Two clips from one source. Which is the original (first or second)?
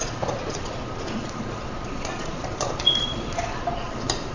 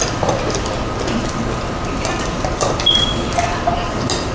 second